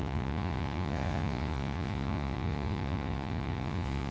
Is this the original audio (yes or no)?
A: no